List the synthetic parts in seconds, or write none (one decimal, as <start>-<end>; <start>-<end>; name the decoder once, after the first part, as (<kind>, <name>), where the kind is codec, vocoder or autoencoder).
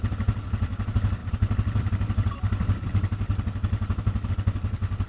1.2-4.3 (vocoder, BigVGAN v2)